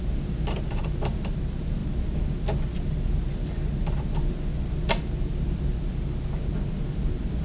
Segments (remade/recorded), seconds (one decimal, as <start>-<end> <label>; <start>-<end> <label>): 0.0-7.4 recorded